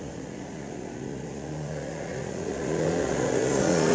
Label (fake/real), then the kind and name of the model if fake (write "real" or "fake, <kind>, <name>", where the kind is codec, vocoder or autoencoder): fake, vocoder, Vocos